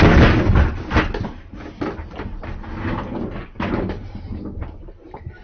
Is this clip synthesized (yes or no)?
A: no